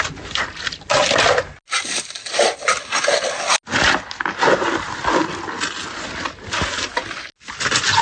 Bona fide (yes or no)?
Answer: yes